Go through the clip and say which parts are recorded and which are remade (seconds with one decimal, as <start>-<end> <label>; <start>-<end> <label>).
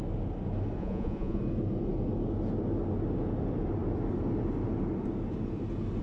0.0-0.8 recorded; 0.8-1.4 remade; 1.4-6.0 recorded